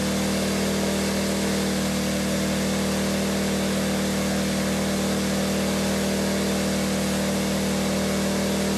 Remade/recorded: recorded